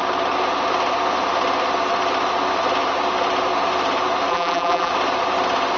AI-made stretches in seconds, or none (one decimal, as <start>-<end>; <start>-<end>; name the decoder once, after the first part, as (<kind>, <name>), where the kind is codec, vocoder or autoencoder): 4.3-4.9 (vocoder, BigVGAN v2)

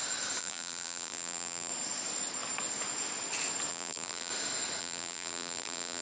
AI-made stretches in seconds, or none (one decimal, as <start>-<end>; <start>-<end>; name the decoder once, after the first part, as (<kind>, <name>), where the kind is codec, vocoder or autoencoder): 0.4-1.7 (vocoder, BigVGAN v2); 3.7-4.3; 4.8-6.0

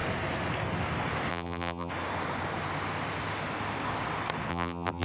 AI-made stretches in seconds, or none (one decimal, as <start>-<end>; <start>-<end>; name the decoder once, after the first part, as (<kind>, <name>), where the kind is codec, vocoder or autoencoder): 1.3-1.9 (vocoder, BigVGAN v2); 4.5-5.0

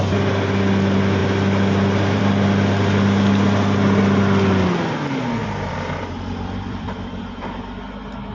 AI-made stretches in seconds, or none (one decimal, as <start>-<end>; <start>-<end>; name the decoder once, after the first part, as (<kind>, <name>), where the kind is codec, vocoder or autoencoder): 5.4-7.2 (vocoder, BigVGAN v2)

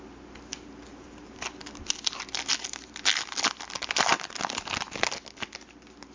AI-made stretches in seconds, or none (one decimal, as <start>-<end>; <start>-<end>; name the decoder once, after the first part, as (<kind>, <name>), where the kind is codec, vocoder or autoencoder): 0.9-1.7 (vocoder, BigVGAN v2)